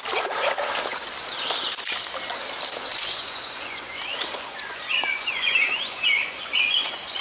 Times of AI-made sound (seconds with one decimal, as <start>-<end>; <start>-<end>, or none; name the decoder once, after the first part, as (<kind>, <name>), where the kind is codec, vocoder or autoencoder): 2.9-7.2 (vocoder, Vocos)